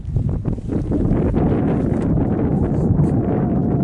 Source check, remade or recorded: recorded